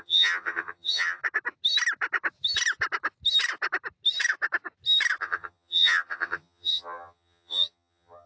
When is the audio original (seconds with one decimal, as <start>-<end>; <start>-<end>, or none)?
1.2-5.2